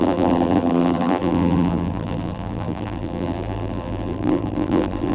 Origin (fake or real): fake